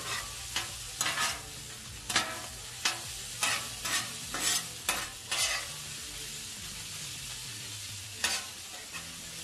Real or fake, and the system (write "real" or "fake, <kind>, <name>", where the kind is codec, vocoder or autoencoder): real